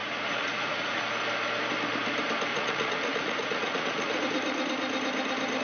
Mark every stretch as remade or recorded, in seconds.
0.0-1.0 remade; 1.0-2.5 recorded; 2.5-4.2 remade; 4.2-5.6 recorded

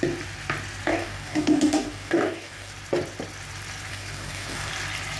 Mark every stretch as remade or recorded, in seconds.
0.0-0.9 recorded; 0.9-2.7 remade; 2.7-3.9 recorded; 3.9-4.7 remade; 4.7-5.2 recorded

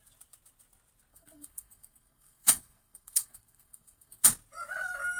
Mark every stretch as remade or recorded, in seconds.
0.0-1.1 recorded; 1.1-4.2 remade; 4.2-5.2 recorded

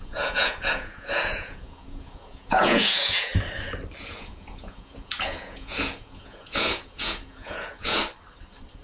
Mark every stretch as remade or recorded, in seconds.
0.0-3.3 remade; 3.3-4.0 recorded; 4.0-8.0 remade; 8.0-8.8 recorded

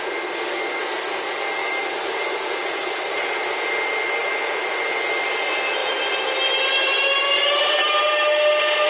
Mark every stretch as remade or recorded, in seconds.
0.0-1.6 recorded; 1.6-3.3 remade; 3.3-5.8 recorded; 5.8-8.1 remade; 8.1-8.9 recorded

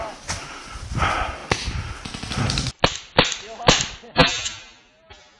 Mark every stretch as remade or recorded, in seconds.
0.0-5.4 recorded

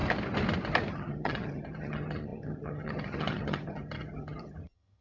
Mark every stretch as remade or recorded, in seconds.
0.0-0.9 recorded; 0.9-5.0 remade

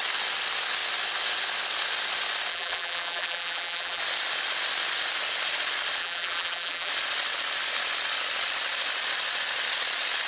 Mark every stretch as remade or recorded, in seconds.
0.0-2.5 recorded; 2.5-4.0 remade; 4.0-6.0 recorded; 6.0-6.9 remade; 6.9-10.3 recorded